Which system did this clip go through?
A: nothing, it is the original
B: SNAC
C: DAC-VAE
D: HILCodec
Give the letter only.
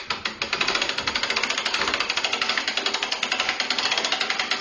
A